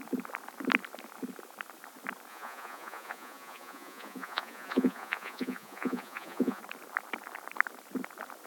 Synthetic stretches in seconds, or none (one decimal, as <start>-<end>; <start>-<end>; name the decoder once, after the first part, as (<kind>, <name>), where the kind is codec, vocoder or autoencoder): 2.3-6.6 (vocoder, Vocos)